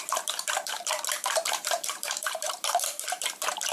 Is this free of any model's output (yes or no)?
no